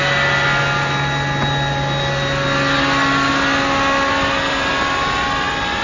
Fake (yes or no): no